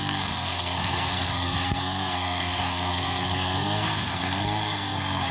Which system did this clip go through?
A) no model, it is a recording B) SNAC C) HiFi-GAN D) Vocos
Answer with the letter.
B